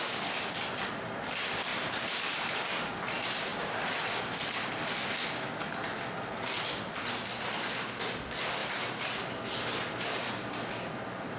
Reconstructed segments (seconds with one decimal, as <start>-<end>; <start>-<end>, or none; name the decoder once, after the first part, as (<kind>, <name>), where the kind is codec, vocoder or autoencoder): 1.7-2.5 (vocoder, BigVGAN v2); 8.6-10.5